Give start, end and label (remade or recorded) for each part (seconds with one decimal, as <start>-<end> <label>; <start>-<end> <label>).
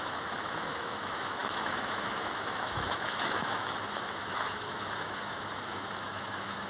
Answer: 0.0-6.7 remade